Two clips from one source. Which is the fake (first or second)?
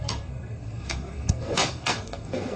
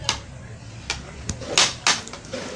first